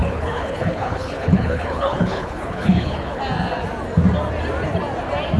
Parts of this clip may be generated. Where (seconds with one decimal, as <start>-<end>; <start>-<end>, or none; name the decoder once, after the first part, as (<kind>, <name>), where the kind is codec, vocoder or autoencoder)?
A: 0.0-3.2 (codec, HILCodec)